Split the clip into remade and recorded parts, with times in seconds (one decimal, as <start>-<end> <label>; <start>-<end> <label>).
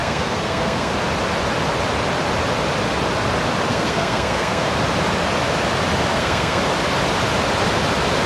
0.0-0.9 remade; 0.9-3.7 recorded; 3.7-4.7 remade; 4.7-6.1 recorded; 6.1-6.6 remade; 6.6-8.3 recorded